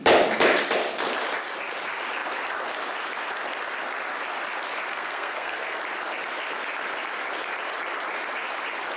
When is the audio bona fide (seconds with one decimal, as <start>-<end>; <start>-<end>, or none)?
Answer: 0.0-4.9; 5.8-9.0

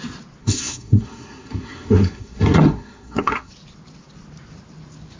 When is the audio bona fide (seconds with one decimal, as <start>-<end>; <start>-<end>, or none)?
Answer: 0.0-0.4; 3.5-5.2

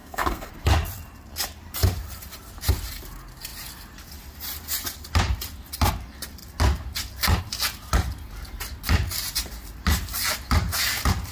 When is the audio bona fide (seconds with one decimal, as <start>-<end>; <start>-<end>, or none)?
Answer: 0.5-11.3

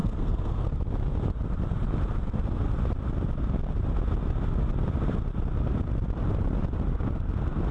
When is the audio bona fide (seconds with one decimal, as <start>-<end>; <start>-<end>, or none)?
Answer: 0.8-7.7

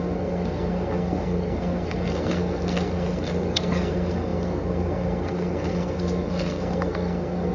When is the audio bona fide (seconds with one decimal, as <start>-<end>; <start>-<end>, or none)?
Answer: none